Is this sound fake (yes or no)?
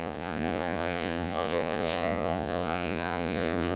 yes